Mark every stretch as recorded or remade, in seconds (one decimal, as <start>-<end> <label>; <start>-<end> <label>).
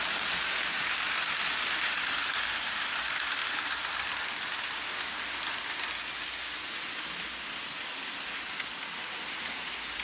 0.0-10.0 recorded